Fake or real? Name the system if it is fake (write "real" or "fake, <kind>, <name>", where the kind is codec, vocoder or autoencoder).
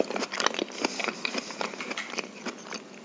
real